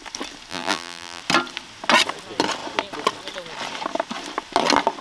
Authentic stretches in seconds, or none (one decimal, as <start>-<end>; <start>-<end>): 0.0-0.5; 1.2-5.0